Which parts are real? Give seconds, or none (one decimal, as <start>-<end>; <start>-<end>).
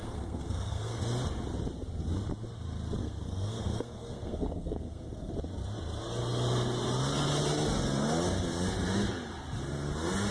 1.0-3.0; 5.3-10.3